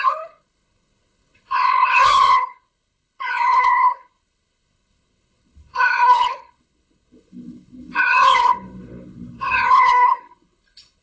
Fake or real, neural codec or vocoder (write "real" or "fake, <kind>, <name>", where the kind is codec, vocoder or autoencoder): fake, codec, HILCodec